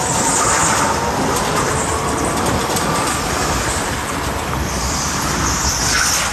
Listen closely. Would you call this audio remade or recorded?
recorded